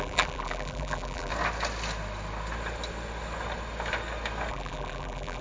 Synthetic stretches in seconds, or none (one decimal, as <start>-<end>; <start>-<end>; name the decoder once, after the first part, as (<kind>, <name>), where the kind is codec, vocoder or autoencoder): 0.0-1.3 (vocoder, BigVGAN v2); 4.5-5.4